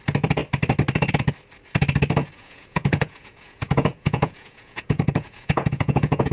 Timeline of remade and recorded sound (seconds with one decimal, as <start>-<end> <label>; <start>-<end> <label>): 0.0-2.2 recorded; 2.2-6.3 remade